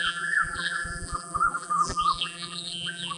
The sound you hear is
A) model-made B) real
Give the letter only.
A